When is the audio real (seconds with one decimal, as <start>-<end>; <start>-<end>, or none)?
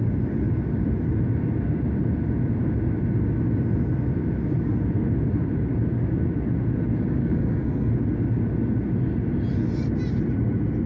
0.0-7.2; 7.9-10.9